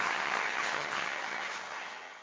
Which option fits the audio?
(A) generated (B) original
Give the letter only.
A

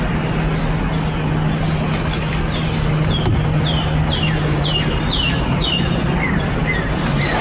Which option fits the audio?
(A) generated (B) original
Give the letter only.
B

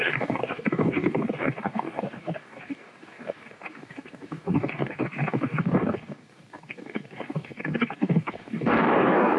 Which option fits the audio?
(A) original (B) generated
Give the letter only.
B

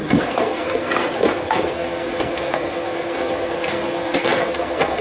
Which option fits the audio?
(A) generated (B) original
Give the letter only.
A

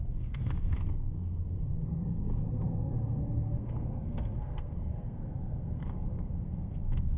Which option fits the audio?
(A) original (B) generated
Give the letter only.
B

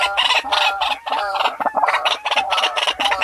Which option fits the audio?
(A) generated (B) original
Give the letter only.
B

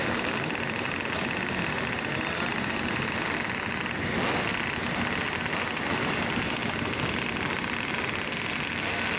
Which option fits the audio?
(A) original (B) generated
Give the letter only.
A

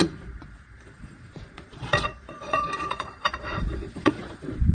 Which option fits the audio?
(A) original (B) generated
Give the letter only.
B